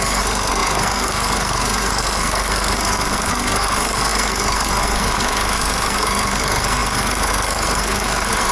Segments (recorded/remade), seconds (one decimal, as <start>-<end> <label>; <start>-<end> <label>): 0.0-8.5 remade